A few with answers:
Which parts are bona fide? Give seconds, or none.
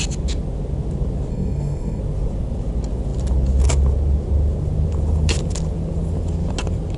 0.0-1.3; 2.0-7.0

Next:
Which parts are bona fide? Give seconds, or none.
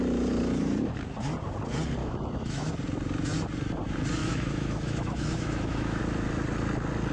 0.0-2.0; 2.7-4.2; 6.0-7.1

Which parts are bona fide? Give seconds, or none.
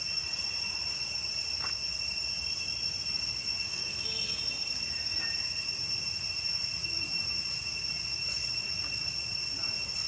0.0-3.7; 4.4-10.1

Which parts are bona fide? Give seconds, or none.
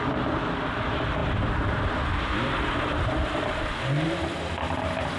0.0-1.2; 4.3-5.2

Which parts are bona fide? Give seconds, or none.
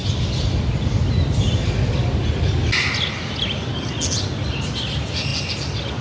0.0-6.0